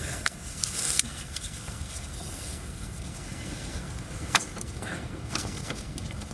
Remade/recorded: remade